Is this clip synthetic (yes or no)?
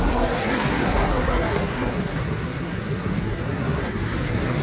yes